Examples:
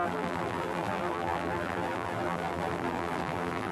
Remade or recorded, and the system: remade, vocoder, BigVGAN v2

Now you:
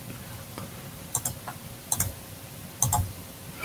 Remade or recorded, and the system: recorded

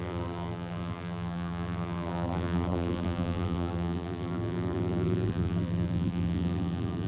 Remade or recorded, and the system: remade, vocoder, BigVGAN v2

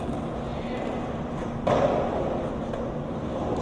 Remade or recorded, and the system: recorded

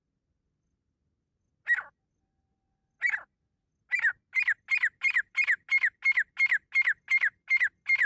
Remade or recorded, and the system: recorded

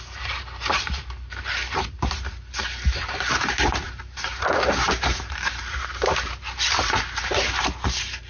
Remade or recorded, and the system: remade, vocoder, BigVGAN v2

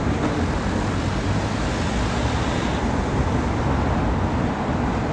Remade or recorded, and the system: recorded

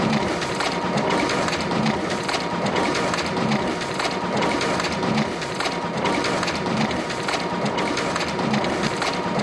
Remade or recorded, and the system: remade, vocoder, BigVGAN v2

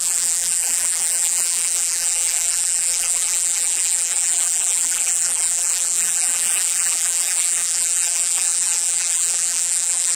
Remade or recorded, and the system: remade, vocoder, BigVGAN v2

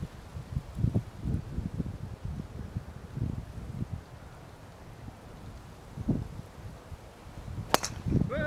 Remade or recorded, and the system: recorded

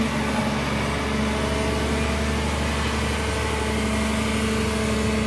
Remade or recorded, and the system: recorded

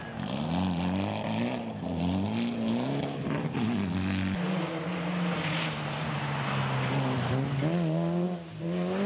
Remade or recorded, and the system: recorded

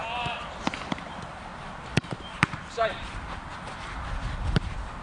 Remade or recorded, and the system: remade, vocoder, BigVGAN v2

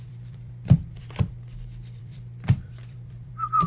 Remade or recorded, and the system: remade, vocoder, BigVGAN v2